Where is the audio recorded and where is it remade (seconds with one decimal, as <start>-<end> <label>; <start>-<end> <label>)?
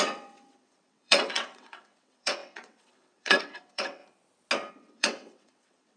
0.0-4.0 remade; 4.0-4.7 recorded; 4.7-6.0 remade